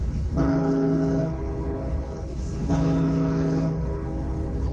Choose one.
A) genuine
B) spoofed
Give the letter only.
B